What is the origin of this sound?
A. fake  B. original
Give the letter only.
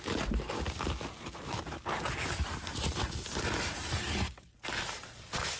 B